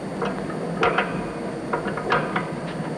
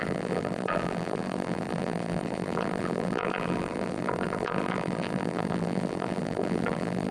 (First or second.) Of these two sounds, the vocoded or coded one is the second